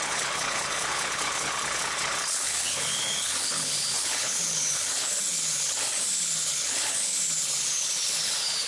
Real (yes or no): no